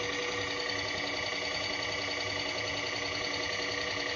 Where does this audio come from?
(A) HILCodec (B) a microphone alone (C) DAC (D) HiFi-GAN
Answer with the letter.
B